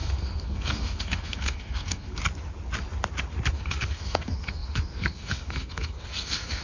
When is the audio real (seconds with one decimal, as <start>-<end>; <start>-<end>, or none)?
2.2-3.5